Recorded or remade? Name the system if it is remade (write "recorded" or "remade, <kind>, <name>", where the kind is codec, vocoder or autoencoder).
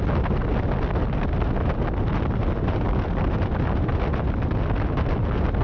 recorded